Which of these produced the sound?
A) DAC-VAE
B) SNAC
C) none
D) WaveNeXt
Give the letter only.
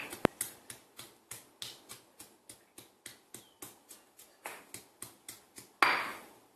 C